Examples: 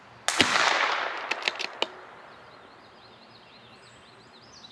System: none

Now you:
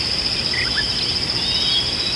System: none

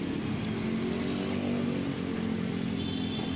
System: none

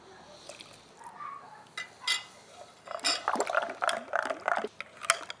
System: none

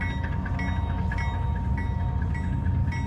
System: none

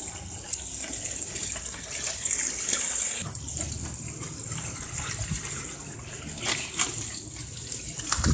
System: none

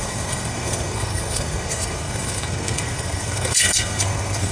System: codec, SNAC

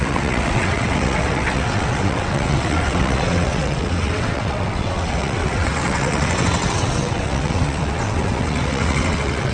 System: vocoder, WaveNeXt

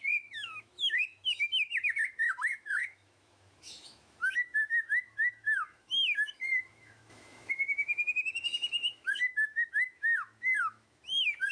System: autoencoder, DAC-VAE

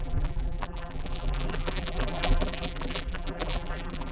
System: vocoder, BigVGAN v2